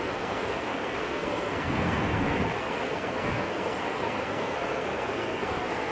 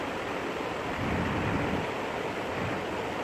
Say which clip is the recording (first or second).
second